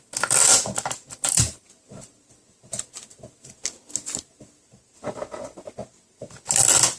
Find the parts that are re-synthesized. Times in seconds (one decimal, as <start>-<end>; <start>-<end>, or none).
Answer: none

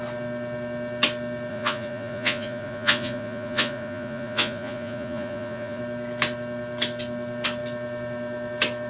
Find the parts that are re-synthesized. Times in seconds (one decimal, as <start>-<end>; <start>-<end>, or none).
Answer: 1.5-5.8

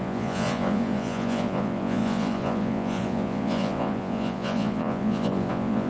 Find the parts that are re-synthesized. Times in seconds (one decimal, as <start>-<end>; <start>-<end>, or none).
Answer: 0.0-5.9